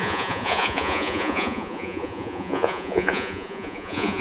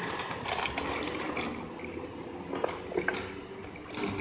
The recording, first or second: second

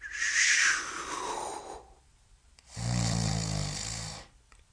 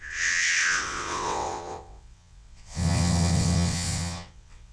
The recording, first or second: first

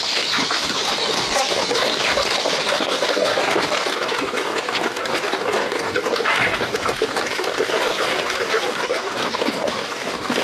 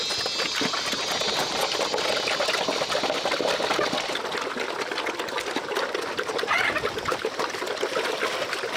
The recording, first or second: second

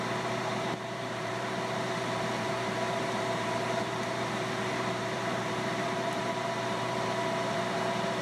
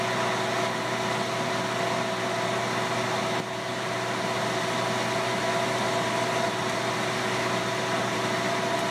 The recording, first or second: second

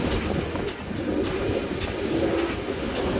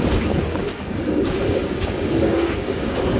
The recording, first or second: first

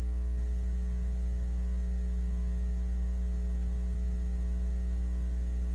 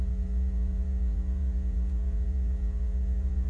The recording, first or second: first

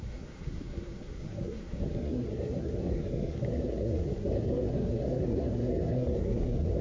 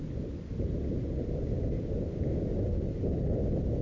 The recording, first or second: second